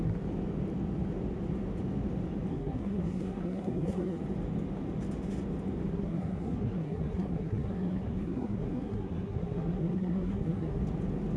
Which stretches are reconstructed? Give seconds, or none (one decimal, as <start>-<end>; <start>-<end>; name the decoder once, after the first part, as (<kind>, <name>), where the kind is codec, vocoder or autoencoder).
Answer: 2.5-4.2 (codec, SNAC); 5.9-10.8